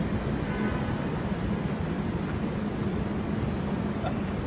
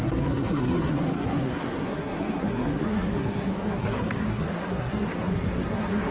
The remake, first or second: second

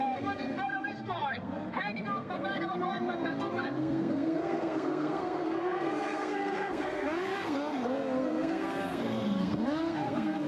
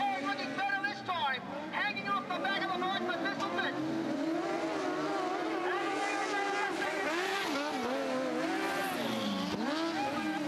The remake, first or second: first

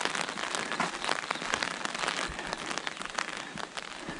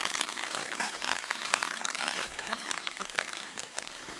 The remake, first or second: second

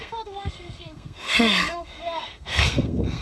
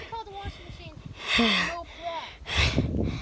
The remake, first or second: first